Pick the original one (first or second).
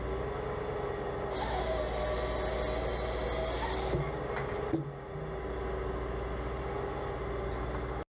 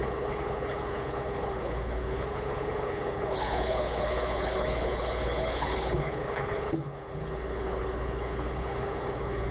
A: first